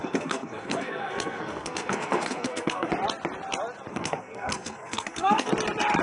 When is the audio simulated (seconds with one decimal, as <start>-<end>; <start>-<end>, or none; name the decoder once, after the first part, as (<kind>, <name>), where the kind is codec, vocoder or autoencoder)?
0.0-2.9 (codec, SNAC); 3.9-5.5